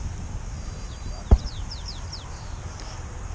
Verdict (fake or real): fake